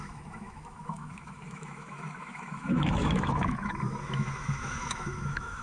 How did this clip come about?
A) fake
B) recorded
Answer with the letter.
A